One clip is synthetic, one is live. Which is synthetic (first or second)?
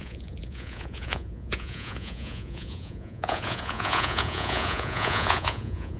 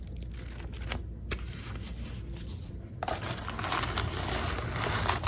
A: first